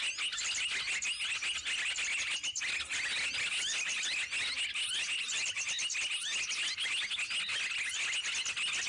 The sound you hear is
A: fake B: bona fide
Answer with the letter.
B